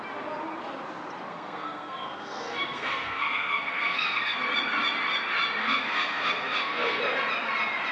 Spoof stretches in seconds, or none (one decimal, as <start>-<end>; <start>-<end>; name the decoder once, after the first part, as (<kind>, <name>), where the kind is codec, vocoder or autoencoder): 1.3-4.4 (codec, SNAC); 5.6-7.0